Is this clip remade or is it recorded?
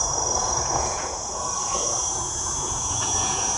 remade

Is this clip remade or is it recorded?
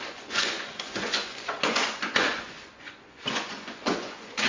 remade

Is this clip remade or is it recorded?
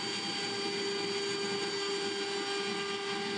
recorded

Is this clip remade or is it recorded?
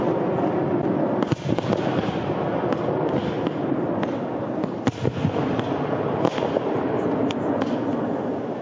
recorded